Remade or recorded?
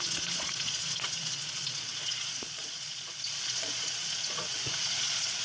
remade